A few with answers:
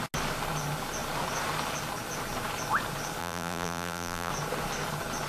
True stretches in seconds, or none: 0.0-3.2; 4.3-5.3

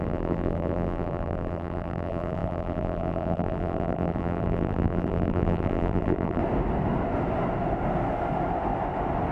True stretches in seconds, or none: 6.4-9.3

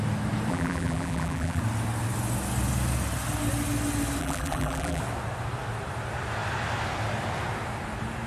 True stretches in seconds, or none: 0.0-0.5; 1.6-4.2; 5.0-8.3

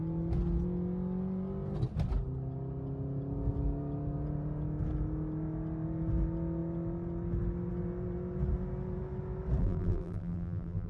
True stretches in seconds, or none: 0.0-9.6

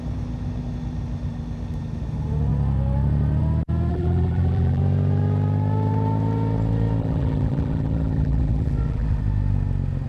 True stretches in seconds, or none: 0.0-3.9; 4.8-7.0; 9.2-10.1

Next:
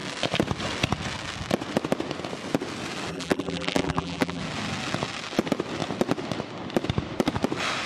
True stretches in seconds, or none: 0.0-3.1; 4.4-7.9

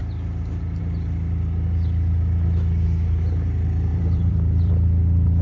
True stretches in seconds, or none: 0.0-3.9; 4.7-5.4